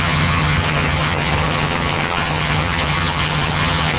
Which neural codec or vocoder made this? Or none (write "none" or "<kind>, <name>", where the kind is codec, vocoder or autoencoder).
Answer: vocoder, HiFi-GAN